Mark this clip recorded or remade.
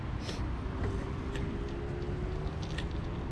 recorded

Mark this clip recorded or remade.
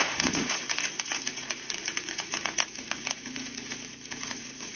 remade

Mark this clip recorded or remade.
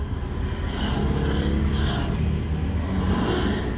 recorded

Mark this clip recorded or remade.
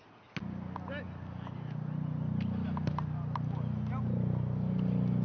recorded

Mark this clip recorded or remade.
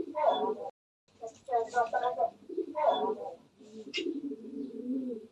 recorded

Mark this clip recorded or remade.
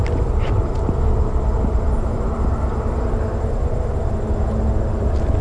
recorded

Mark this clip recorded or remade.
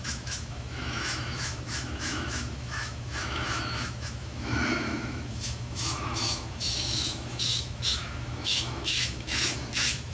remade